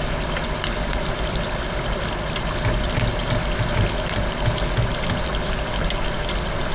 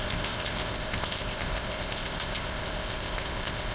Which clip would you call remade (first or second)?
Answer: second